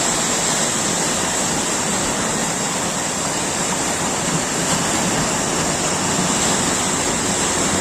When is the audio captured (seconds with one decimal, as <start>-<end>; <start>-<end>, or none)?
0.0-7.8